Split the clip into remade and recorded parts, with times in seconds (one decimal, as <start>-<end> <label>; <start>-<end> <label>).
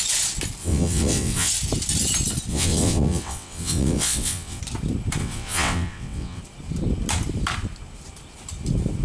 0.0-0.6 recorded; 0.6-1.5 remade; 1.5-2.5 recorded; 2.5-4.6 remade; 4.6-5.2 recorded; 5.2-6.4 remade; 6.4-9.0 recorded